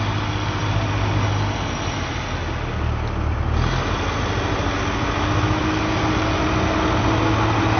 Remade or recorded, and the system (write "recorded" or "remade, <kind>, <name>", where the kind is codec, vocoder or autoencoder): recorded